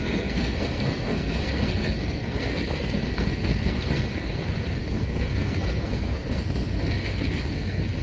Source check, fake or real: fake